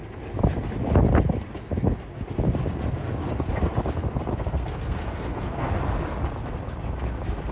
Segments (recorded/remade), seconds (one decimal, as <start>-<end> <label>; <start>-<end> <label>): 0.0-4.3 recorded; 4.3-5.7 remade; 5.7-7.5 recorded